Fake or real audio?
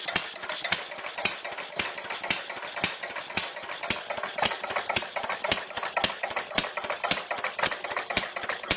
real